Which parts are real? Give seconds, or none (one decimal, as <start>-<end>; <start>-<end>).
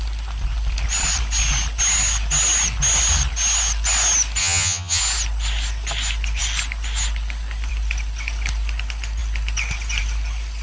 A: 0.0-4.4; 5.0-10.6